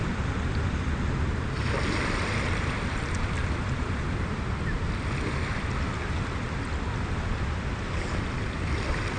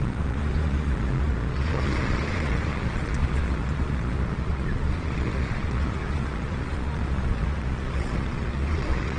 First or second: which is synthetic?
second